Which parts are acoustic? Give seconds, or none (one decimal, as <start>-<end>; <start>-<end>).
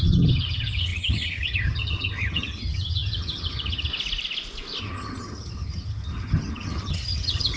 3.9-4.8